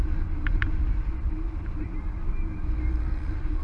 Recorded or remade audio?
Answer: remade